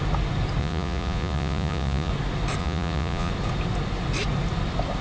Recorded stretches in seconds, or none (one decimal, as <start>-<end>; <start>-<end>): 0.0-0.6; 2.1-2.6; 3.3-5.0